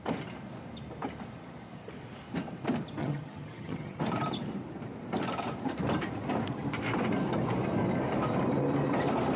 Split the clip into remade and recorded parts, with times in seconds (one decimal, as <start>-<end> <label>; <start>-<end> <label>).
0.0-3.0 recorded; 3.0-4.0 remade; 4.0-9.4 recorded